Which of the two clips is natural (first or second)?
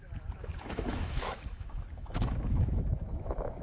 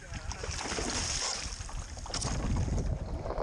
second